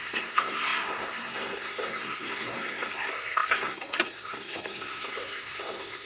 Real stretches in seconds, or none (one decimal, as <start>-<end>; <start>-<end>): none